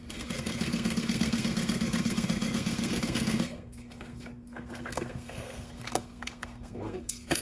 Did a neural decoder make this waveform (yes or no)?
yes